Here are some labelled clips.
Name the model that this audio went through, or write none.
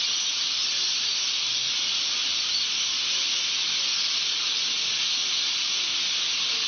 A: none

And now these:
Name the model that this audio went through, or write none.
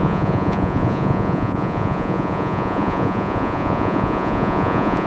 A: vocoder, Vocos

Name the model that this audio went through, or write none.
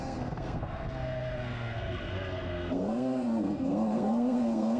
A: codec, SNAC